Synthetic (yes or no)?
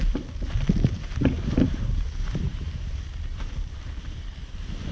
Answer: yes